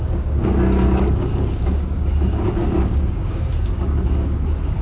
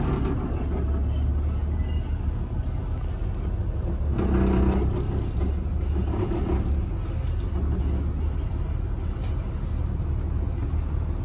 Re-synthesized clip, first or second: first